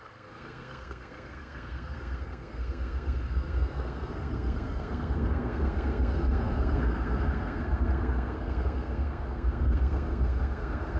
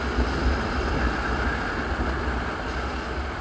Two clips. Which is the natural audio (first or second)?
second